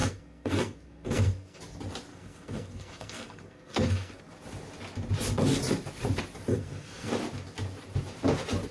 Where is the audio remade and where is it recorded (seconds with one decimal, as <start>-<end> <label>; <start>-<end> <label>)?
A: 0.0-1.6 remade; 1.6-2.1 recorded; 2.1-4.2 remade; 4.2-6.5 recorded; 6.5-7.1 remade; 7.1-8.7 recorded